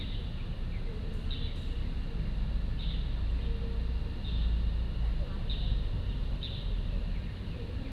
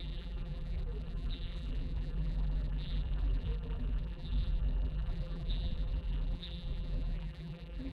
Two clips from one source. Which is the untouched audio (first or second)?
first